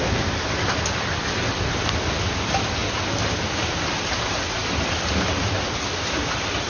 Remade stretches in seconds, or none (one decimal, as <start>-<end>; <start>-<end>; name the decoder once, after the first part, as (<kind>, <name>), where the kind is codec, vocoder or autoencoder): none